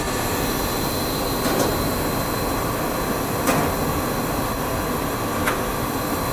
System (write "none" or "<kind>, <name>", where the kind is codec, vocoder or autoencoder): none